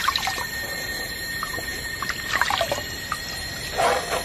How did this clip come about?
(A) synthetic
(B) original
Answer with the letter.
A